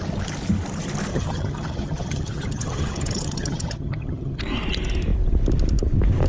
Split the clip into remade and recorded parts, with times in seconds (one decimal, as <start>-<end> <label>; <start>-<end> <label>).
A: 0.0-1.1 recorded; 1.1-4.4 remade; 4.4-6.3 recorded